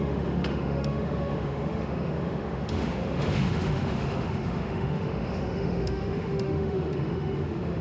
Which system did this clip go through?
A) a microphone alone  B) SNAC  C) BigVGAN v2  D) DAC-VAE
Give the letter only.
D